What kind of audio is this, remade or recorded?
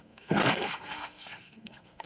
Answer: remade